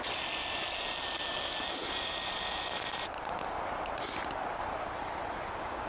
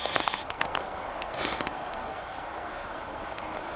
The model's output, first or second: second